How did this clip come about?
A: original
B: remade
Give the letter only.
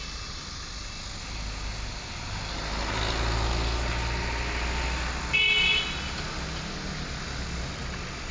A